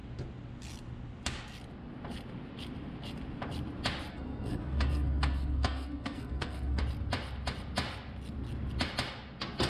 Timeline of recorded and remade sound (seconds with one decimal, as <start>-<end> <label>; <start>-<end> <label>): 0.0-4.1 recorded; 4.1-6.8 remade; 6.8-9.7 recorded

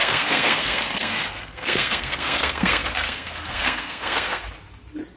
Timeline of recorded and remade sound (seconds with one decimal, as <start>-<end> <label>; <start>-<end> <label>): 0.0-4.4 remade; 4.4-5.2 recorded

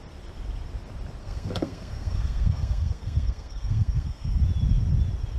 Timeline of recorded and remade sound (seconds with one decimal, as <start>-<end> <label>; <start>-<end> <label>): 0.0-1.2 recorded; 1.2-4.4 remade; 4.4-5.4 recorded

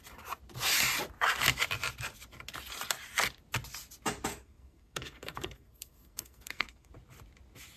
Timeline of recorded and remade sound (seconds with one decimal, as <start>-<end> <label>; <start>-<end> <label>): 0.0-4.3 recorded; 4.3-6.9 remade; 6.9-7.8 recorded

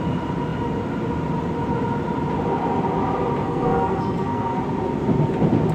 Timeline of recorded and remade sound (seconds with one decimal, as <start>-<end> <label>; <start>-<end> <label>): 0.0-3.4 recorded; 3.4-4.6 remade; 4.6-5.7 recorded

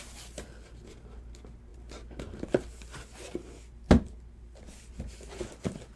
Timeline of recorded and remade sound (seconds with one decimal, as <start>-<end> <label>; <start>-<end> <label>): 0.0-6.0 recorded